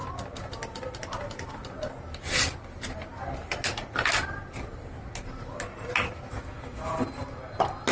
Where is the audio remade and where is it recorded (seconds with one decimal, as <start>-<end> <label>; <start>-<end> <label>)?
0.0-6.3 recorded; 6.3-6.9 remade; 6.9-7.9 recorded